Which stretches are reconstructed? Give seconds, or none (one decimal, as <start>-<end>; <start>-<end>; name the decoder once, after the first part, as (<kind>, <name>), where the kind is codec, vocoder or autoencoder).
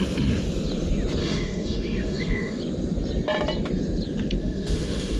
1.2-2.6 (autoencoder, DAC-VAE); 4.4-5.2